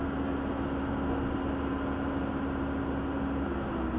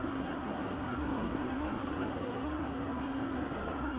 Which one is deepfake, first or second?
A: second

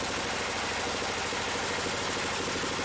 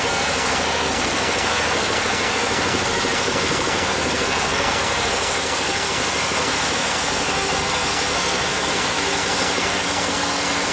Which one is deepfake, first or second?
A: second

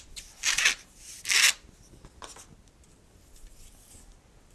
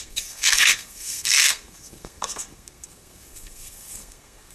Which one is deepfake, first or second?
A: second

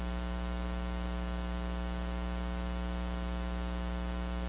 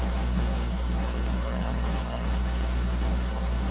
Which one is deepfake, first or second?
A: second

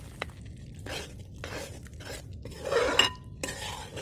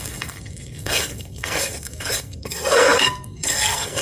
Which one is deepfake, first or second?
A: second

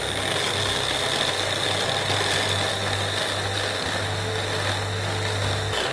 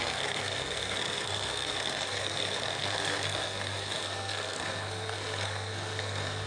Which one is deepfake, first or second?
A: second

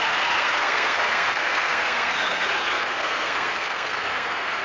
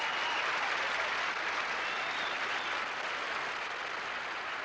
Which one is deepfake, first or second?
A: first